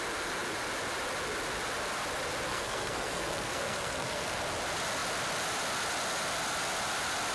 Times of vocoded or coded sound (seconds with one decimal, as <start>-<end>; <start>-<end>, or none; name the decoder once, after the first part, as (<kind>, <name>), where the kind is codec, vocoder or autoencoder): 2.5-4.4 (codec, SNAC)